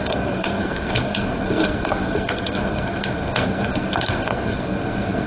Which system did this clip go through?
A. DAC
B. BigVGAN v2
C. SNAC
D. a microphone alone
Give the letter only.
C